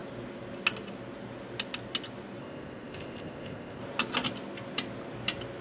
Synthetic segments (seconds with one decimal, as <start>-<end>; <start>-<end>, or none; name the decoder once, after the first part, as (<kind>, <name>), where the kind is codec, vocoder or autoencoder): 2.4-3.8 (codec, ZipCodec)